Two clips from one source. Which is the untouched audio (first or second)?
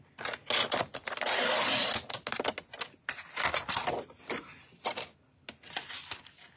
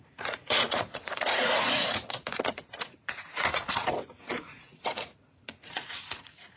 first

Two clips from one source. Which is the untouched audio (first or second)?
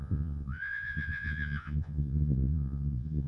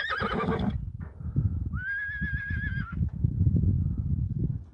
second